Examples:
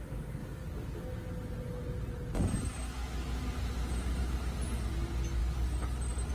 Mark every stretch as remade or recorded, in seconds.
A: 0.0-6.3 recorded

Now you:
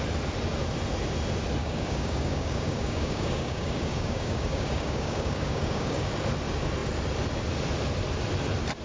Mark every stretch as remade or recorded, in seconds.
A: 0.0-1.6 recorded; 1.6-6.1 remade; 6.1-8.8 recorded

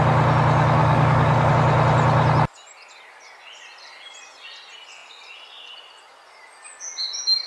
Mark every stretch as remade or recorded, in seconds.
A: 0.0-0.8 recorded; 0.8-1.5 remade; 1.5-7.5 recorded

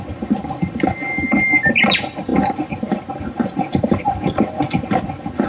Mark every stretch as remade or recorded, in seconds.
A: 0.0-5.5 recorded

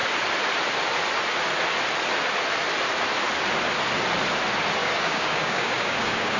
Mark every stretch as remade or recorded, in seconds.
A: 0.0-4.8 recorded; 4.8-6.4 remade